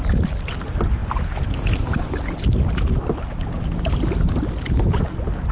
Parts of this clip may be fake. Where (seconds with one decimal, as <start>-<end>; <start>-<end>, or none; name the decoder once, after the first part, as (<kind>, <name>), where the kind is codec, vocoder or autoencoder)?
none